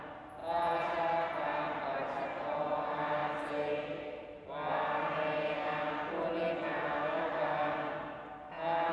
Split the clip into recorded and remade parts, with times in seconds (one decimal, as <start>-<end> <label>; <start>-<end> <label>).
0.0-0.4 recorded; 0.4-1.0 remade; 1.0-8.9 recorded